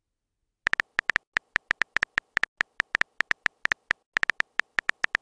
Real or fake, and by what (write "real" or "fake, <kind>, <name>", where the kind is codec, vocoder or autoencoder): real